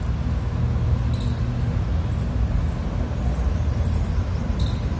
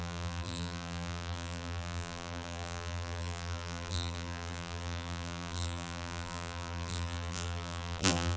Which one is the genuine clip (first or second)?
first